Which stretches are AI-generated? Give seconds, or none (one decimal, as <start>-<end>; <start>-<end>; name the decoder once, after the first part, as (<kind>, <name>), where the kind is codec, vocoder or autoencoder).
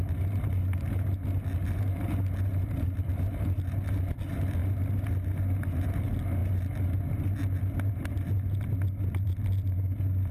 none